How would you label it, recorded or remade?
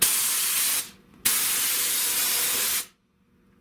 recorded